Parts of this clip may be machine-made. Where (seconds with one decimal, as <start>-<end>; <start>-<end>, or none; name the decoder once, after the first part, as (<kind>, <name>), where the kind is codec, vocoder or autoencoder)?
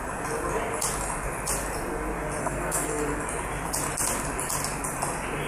2.4-3.0 (codec, SNAC)